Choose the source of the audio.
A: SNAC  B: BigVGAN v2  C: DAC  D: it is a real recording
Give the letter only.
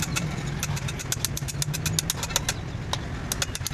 D